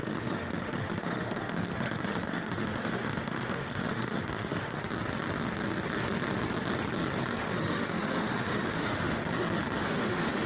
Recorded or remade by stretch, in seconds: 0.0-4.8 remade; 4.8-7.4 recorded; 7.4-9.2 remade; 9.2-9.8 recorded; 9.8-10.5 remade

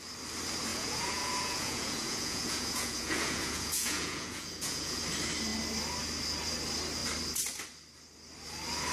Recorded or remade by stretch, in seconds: 0.0-0.7 recorded; 0.7-5.0 remade; 5.0-8.9 recorded

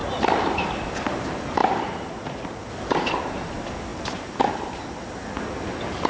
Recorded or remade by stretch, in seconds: 0.0-6.1 recorded